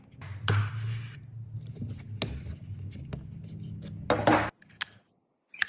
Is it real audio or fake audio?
real